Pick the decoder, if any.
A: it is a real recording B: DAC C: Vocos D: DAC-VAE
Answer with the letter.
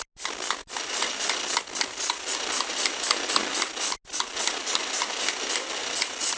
A